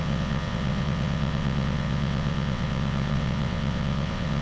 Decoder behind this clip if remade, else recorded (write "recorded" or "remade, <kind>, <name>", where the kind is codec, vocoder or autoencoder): remade, vocoder, WaveNeXt